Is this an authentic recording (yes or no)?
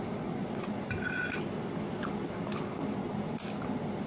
yes